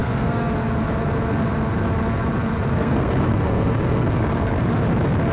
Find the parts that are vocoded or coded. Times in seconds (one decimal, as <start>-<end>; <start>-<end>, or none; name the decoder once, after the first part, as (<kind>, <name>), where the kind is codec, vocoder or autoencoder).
0.0-0.5 (codec, SNAC); 2.7-4.7